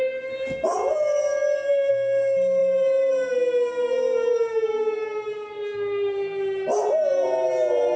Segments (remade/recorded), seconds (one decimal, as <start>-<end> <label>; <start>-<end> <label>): 0.0-8.0 recorded